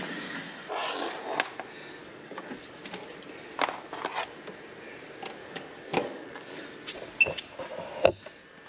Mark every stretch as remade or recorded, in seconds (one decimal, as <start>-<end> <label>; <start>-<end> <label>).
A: 0.0-2.0 recorded; 2.0-2.8 remade; 2.8-5.4 recorded; 5.4-6.6 remade; 6.6-8.7 recorded